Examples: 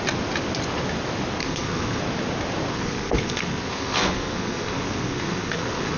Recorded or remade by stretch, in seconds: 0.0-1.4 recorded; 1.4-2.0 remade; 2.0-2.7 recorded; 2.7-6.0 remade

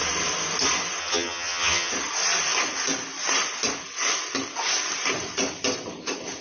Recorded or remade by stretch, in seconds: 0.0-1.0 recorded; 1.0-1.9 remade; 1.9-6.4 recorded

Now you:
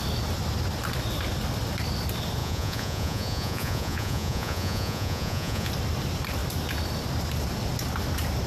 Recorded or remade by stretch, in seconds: 0.0-2.4 recorded; 2.4-5.7 remade; 5.7-8.5 recorded

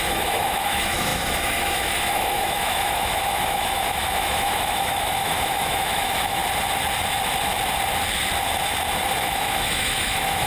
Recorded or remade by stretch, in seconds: 0.0-6.4 remade; 6.4-9.2 recorded; 9.2-10.5 remade